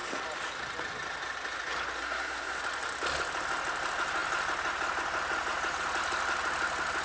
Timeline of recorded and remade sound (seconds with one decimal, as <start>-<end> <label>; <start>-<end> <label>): 0.0-2.0 recorded; 2.0-2.6 remade; 2.6-7.0 recorded